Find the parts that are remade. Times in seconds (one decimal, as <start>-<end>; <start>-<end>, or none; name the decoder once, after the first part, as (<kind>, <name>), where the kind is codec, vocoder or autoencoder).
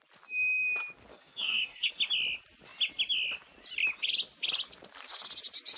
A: 1.1-1.9 (codec, SNAC)